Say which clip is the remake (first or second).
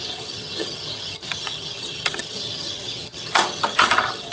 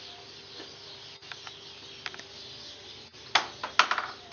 first